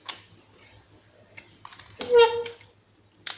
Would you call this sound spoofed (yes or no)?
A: no